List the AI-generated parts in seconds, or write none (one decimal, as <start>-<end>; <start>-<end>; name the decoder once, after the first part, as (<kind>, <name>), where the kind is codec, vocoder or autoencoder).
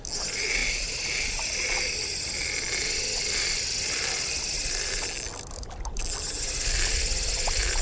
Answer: none